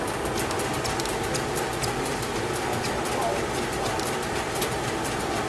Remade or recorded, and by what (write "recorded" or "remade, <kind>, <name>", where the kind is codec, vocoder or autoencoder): recorded